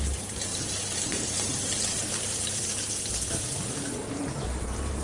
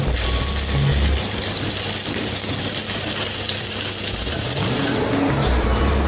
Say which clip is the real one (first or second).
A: second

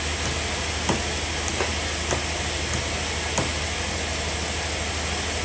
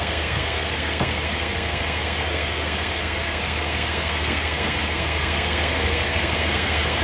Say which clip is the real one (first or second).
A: first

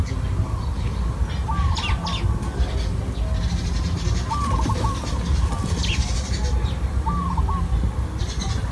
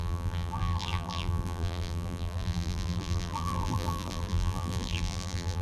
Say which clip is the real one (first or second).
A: first